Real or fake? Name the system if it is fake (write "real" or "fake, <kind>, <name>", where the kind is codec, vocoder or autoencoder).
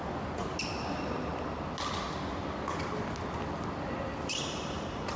real